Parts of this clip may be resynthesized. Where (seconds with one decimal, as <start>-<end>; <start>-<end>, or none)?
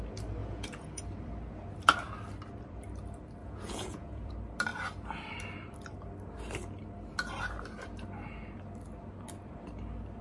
0.4-1.0; 3.4-4.3